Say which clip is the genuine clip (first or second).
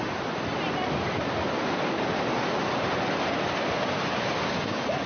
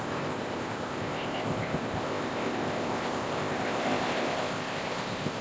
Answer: first